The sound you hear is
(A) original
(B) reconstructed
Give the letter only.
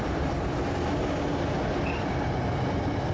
A